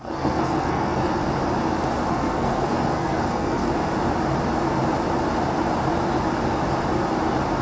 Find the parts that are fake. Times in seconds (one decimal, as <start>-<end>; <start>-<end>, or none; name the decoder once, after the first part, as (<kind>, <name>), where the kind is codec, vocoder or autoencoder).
0.0-1.2 (codec, SNAC); 2.1-3.6